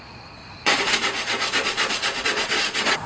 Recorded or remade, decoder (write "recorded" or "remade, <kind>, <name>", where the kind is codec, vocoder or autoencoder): remade, vocoder, Vocos